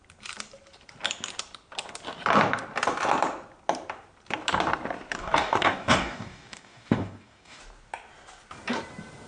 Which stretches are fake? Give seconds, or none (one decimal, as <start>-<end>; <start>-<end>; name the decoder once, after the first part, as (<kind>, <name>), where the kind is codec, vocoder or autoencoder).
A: 5.2-7.6 (codec, DAC)